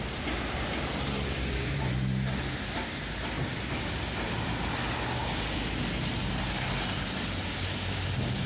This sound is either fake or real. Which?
real